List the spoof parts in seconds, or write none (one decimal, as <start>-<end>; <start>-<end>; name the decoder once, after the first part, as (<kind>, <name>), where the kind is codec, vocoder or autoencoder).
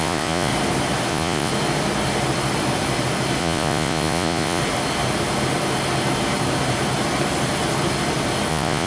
0.0-0.5 (vocoder, Vocos); 1.1-1.5; 3.4-4.6; 8.5-8.9